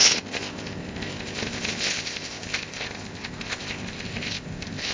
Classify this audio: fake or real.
fake